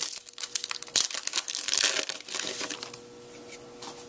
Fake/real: real